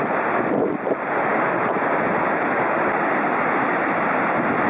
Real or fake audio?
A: real